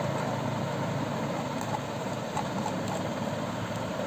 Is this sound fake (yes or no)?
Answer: yes